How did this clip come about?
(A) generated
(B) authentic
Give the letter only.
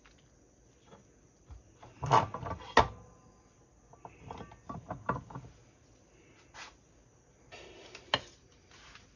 B